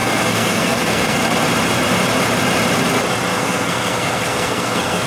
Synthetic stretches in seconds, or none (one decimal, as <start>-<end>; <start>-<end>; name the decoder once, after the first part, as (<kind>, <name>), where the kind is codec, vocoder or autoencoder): 0.0-1.2 (codec, SNAC); 3.3-5.1